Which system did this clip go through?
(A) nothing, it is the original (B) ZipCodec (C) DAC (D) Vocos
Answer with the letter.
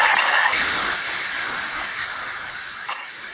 C